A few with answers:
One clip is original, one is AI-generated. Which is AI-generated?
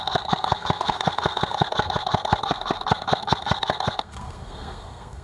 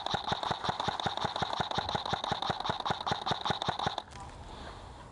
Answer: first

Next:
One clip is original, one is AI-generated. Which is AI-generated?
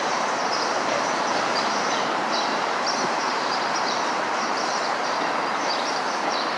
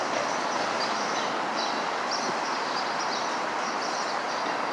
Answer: first